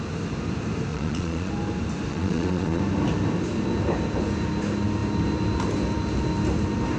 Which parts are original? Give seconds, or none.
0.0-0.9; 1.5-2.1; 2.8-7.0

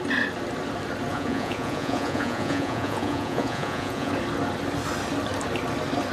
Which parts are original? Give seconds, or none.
0.0-1.1; 4.1-6.1

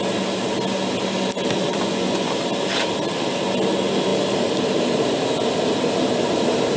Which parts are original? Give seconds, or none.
0.0-1.6; 2.3-6.8

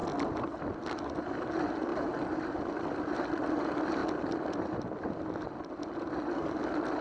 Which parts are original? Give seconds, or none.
0.0-7.0

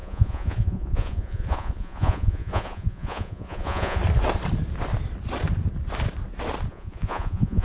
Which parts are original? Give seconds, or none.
4.0-6.7

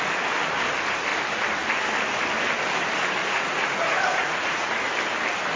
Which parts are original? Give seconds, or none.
0.0-3.2; 4.9-5.6

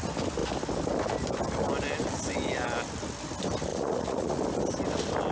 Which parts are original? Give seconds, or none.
0.0-3.7; 4.4-5.3

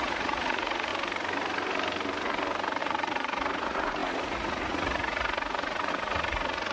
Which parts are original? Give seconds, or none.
0.9-2.8